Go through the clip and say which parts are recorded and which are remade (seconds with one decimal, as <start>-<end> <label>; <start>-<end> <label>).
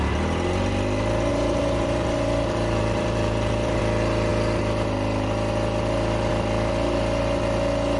0.0-1.3 recorded; 1.3-3.8 remade; 3.8-8.0 recorded